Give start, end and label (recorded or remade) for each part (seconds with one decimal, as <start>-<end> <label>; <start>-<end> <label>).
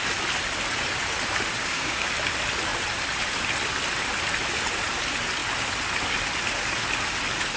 0.0-1.6 recorded; 1.6-2.1 remade; 2.1-7.6 recorded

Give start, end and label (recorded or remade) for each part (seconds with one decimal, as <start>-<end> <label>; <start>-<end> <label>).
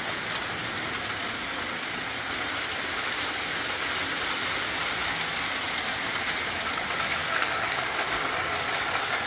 0.0-7.2 recorded; 7.2-9.3 remade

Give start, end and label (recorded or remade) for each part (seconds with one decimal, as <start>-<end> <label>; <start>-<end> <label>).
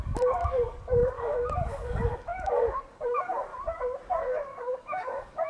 0.0-3.5 remade; 3.5-4.2 recorded; 4.2-5.5 remade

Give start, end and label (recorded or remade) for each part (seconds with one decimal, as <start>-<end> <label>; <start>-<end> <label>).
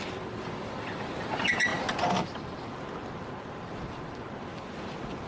0.0-5.3 recorded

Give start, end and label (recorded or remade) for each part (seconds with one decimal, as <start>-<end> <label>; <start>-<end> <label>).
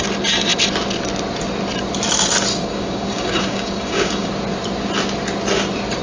0.0-2.5 recorded; 2.5-4.3 remade; 4.3-6.0 recorded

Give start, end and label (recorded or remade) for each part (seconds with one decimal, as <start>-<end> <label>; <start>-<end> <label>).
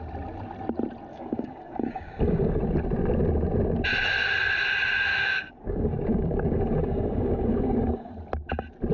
0.0-1.1 recorded; 1.1-2.6 remade; 2.6-5.1 recorded; 5.1-8.1 remade; 8.1-8.9 recorded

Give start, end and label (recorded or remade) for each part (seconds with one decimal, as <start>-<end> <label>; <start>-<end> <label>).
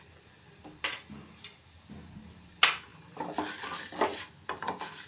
0.0-5.1 recorded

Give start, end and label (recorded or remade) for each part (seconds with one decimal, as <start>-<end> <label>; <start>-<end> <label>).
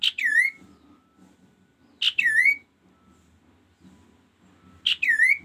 0.0-5.4 recorded